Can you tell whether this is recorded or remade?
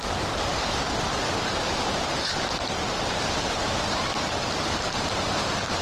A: remade